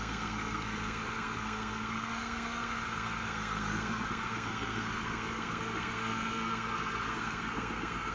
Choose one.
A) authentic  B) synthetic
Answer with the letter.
B